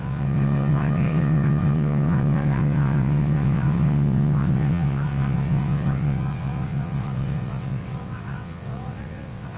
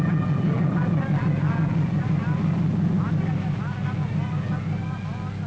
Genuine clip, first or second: second